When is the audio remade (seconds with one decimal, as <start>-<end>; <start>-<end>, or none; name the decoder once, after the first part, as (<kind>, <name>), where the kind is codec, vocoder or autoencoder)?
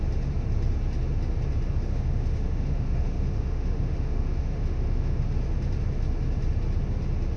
1.9-5.2 (autoencoder, DAC-VAE)